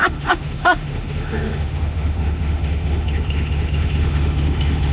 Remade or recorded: remade